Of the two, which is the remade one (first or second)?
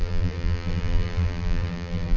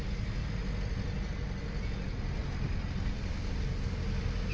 first